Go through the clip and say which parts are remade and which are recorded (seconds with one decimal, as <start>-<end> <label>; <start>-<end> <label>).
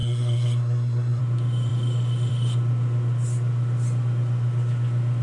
0.0-1.2 remade; 1.2-5.2 recorded